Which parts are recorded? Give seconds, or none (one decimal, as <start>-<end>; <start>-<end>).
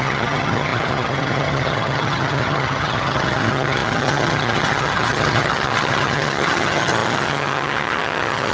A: none